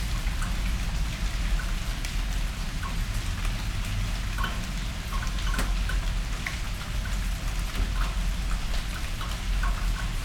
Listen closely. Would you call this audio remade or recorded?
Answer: recorded